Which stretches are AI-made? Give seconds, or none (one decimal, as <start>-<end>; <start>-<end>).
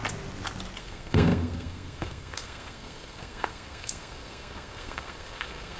0.8-5.8